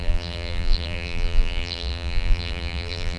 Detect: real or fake fake